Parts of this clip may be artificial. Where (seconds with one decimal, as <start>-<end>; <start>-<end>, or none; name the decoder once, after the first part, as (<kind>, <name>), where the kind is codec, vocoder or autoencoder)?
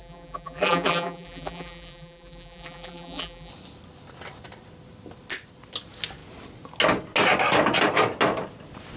0.0-3.5 (vocoder, BigVGAN v2)